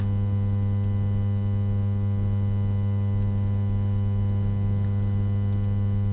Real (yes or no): yes